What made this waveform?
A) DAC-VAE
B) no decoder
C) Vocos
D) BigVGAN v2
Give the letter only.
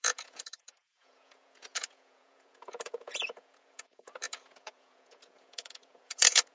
C